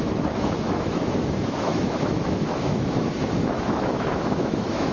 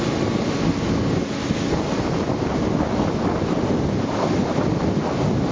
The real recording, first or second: second